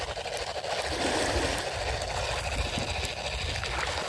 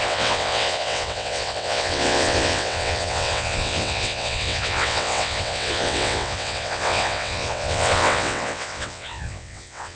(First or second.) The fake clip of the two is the second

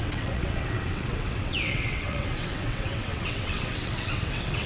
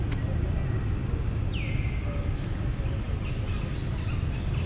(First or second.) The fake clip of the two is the first